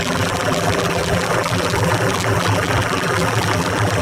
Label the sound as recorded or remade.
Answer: remade